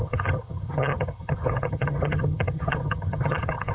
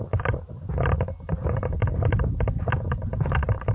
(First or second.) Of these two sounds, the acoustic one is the second